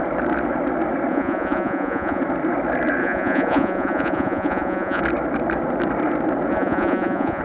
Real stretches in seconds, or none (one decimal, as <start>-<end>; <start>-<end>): 0.0-1.1; 2.2-3.0; 5.0-6.5